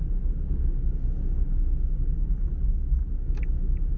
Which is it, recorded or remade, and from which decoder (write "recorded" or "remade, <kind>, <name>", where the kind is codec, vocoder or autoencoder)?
recorded